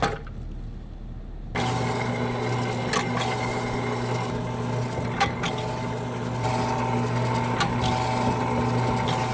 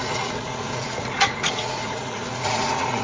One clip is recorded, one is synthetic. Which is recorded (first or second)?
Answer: first